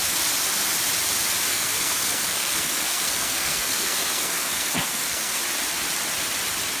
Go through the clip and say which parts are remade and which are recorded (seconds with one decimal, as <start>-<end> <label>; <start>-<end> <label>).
0.0-1.5 recorded; 1.5-5.4 remade; 5.4-6.8 recorded